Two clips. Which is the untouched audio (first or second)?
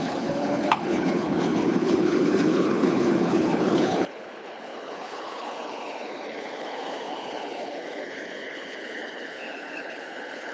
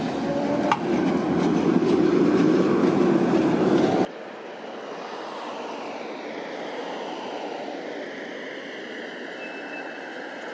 second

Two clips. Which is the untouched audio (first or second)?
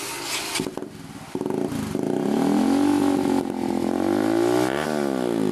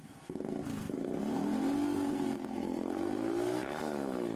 first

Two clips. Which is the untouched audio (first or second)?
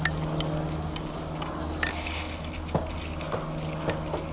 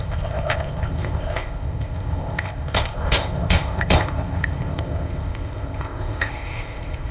first